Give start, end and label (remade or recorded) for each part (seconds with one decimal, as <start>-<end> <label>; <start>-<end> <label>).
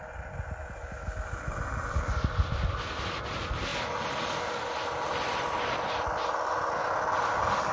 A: 0.0-7.7 recorded